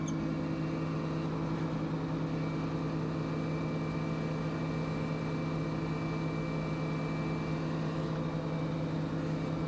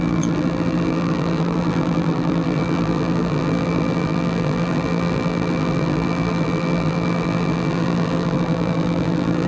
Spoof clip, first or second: second